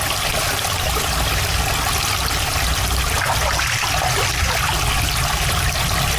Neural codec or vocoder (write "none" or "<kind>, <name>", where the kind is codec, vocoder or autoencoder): none